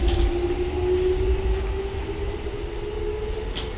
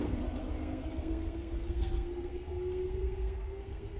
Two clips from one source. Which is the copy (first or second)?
second